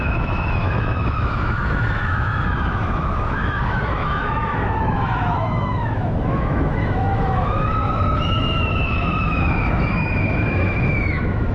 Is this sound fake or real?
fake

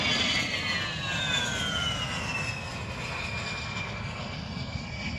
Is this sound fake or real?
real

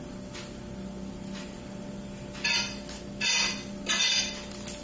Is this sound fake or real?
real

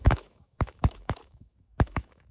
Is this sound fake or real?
fake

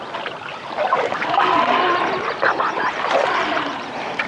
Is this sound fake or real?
real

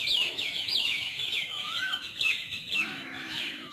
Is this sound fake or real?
fake